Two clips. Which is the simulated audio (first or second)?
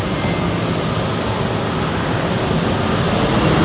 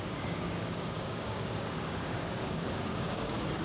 second